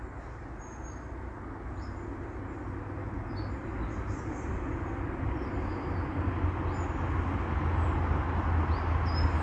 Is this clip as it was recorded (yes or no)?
yes